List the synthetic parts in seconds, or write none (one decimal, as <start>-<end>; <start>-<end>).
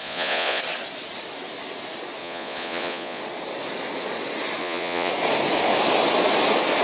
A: 0.0-0.6; 2.2-3.2; 4.6-5.1